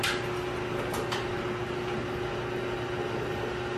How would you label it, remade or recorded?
recorded